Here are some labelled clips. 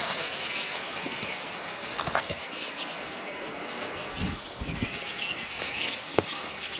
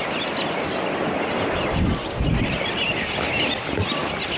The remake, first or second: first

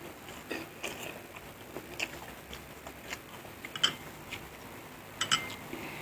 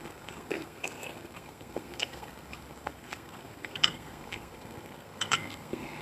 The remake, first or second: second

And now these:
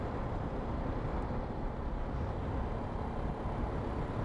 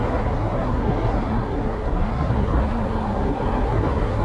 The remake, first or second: second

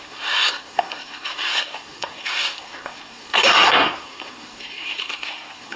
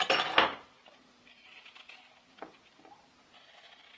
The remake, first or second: first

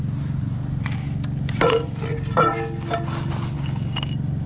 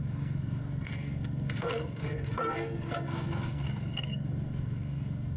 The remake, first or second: second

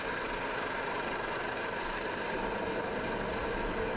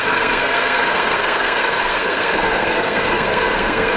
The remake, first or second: second